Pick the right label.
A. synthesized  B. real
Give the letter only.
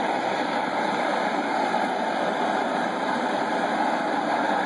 A